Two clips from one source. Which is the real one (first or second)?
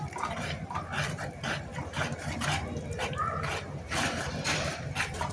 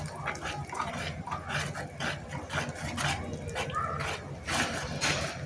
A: second